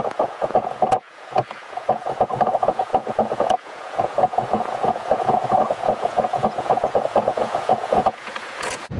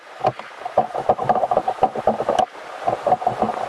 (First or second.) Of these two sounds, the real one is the second